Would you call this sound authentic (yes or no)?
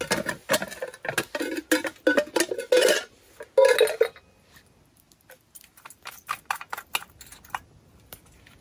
yes